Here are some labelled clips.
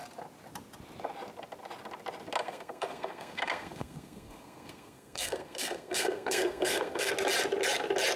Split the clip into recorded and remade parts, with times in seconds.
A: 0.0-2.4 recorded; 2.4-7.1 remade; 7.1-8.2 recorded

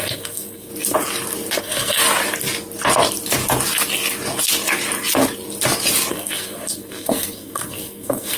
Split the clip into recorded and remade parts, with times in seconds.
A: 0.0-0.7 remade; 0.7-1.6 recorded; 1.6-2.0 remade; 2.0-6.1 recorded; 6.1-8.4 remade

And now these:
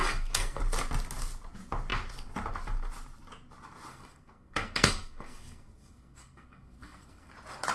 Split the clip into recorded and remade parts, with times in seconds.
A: 0.0-0.6 remade; 0.6-3.9 recorded; 3.9-7.3 remade; 7.3-7.7 recorded